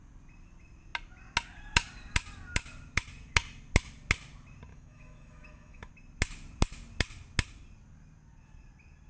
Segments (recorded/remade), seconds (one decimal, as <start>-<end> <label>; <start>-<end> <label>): 0.0-4.7 recorded; 4.7-5.9 remade; 5.9-9.1 recorded

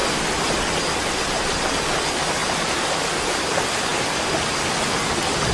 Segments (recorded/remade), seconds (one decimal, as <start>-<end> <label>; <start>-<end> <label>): 0.0-2.4 recorded; 2.4-3.5 remade; 3.5-5.5 recorded

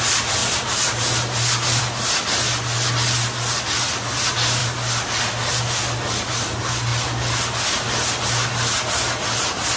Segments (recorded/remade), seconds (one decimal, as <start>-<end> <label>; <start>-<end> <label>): 0.0-9.8 recorded

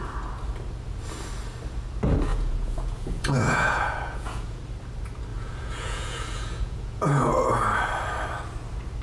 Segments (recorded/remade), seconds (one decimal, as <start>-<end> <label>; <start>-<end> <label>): 0.0-2.3 recorded; 2.3-4.6 remade; 4.6-5.3 recorded; 5.3-7.3 remade; 7.3-9.0 recorded

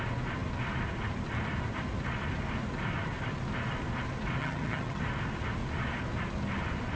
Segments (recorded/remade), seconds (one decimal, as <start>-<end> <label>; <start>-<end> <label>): 0.0-4.4 recorded; 4.4-5.0 remade; 5.0-7.0 recorded

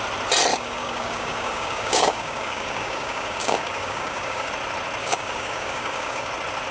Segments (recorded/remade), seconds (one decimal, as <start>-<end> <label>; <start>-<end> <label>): 0.0-0.5 recorded; 0.5-4.5 remade; 4.5-5.0 recorded; 5.0-6.3 remade; 6.3-6.7 recorded

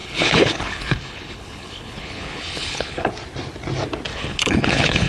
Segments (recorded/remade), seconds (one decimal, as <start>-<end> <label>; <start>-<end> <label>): 0.0-3.1 remade; 3.1-4.1 recorded; 4.1-5.1 remade